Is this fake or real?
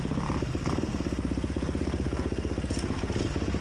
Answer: real